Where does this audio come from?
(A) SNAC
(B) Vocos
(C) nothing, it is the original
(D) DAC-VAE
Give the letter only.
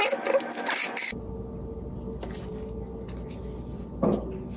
C